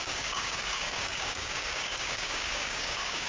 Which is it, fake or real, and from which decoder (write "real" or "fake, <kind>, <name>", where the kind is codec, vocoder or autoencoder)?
fake, codec, DAC